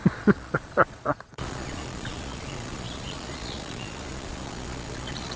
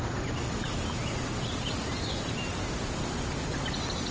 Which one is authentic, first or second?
second